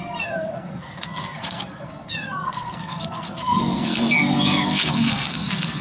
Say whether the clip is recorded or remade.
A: remade